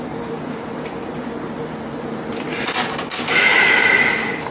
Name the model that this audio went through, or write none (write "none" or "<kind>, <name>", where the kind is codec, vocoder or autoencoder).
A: none